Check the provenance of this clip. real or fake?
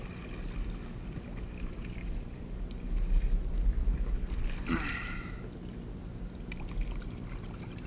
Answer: real